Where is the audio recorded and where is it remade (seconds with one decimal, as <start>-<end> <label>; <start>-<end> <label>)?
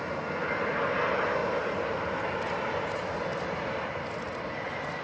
0.0-5.0 recorded